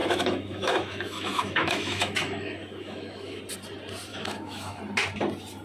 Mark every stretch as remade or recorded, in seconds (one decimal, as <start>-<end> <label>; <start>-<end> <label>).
0.0-3.4 remade; 3.4-4.1 recorded; 4.1-4.8 remade; 4.8-5.6 recorded